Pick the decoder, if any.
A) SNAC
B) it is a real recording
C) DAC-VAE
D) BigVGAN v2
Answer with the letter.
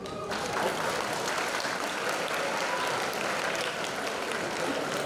B